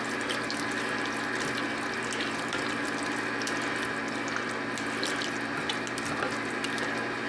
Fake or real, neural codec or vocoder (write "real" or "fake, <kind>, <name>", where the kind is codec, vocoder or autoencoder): real